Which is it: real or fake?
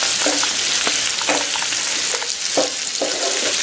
real